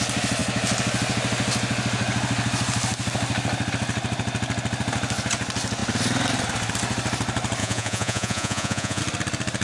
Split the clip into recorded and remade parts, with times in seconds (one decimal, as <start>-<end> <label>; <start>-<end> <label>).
0.0-7.6 recorded; 7.6-9.0 remade; 9.0-9.6 recorded